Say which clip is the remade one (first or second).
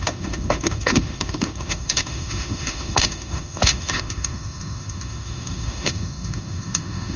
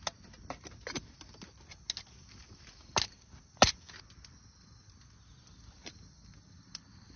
first